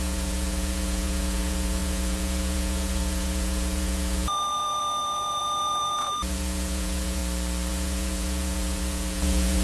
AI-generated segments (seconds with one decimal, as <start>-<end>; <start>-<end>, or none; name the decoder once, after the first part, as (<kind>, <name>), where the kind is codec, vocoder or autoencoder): 0.0-7.2 (vocoder, Vocos); 7.7-9.6